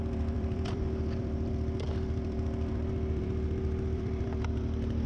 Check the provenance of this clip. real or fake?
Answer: fake